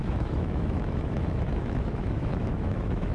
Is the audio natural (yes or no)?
no